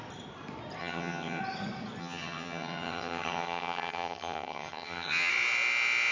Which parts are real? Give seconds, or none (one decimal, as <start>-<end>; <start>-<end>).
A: 0.0-0.8; 1.4-2.0; 5.3-6.1